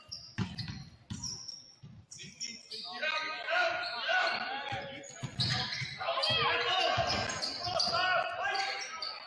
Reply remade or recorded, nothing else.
recorded